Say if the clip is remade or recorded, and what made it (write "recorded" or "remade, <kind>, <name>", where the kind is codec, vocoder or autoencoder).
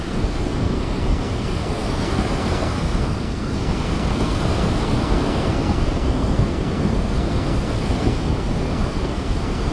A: remade, codec, SNAC